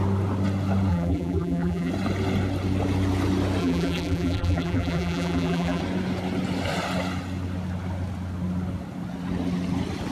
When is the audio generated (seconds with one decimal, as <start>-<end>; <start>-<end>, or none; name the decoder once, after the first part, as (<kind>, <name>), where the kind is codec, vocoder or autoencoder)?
0.9-1.9 (vocoder, BigVGAN v2); 3.6-5.8